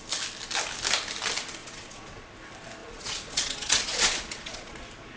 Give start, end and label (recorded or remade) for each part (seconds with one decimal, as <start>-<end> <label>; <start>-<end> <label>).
0.0-1.6 recorded; 1.6-2.3 remade; 2.3-2.8 recorded; 2.8-4.8 remade; 4.8-5.2 recorded